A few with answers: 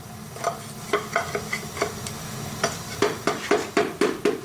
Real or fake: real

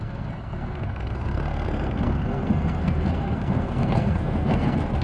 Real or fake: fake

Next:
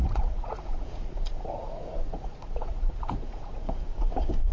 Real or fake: fake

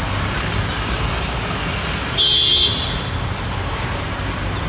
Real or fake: real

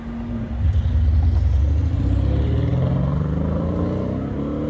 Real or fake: real